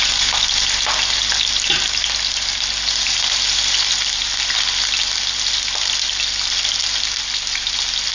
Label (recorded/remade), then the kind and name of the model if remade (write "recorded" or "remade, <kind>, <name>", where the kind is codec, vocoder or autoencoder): recorded